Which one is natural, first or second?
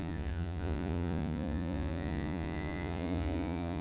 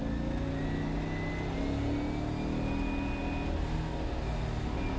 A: second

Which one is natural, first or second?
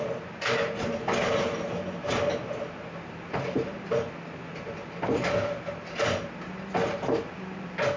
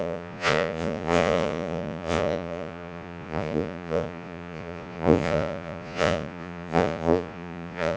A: first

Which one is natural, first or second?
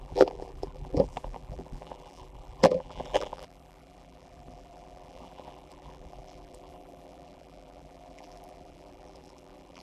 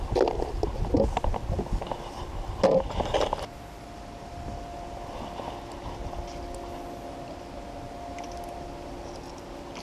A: second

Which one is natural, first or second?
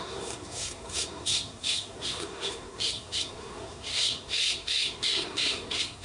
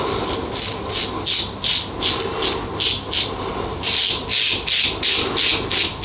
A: second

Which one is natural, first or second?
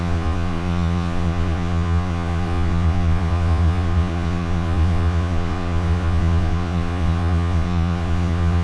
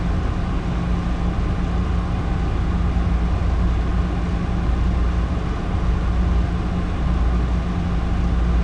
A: second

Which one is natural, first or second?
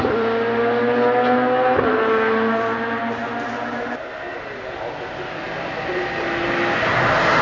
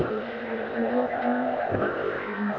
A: first